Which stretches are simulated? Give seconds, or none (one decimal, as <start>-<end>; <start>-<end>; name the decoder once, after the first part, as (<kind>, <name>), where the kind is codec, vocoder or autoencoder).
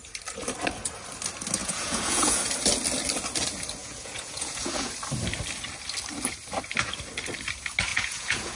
1.6-2.5 (vocoder, Vocos); 3.8-4.9; 7.9-8.6